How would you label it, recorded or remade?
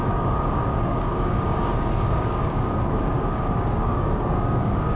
remade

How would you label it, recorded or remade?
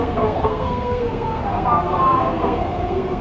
remade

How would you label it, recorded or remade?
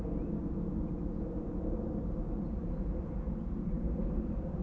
recorded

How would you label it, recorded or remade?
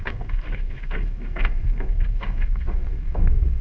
remade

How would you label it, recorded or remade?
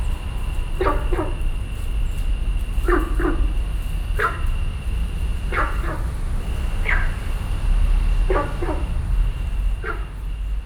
recorded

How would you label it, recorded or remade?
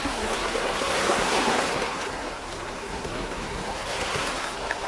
remade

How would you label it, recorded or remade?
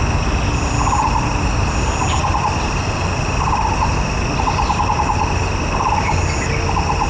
recorded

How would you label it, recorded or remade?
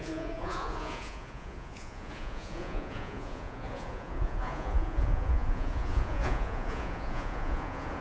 remade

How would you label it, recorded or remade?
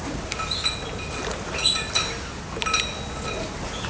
recorded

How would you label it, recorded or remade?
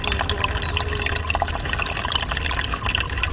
recorded